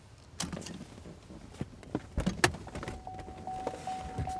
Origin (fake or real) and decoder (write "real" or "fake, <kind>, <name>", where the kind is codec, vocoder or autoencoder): real